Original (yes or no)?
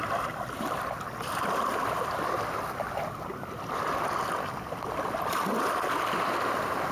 yes